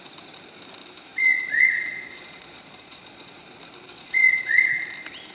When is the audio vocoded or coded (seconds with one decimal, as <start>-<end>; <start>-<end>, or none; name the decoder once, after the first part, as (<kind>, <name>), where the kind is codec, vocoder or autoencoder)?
1.1-3.4 (vocoder, Vocos); 3.9-4.8